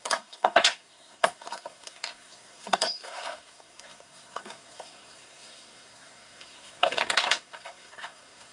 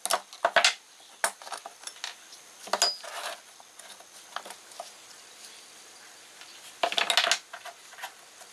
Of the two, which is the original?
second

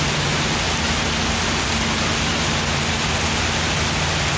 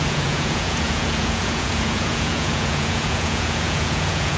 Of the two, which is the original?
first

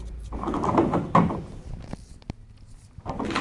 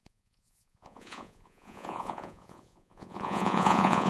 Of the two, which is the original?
first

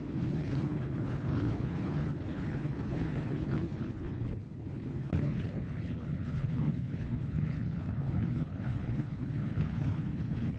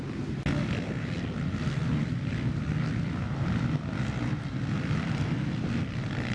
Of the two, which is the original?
second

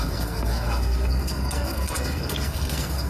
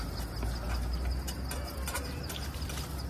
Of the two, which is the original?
second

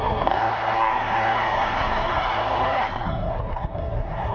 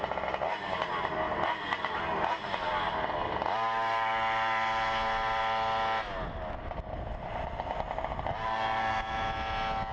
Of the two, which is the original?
second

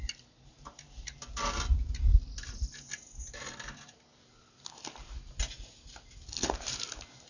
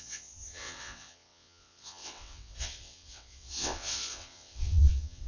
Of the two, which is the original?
first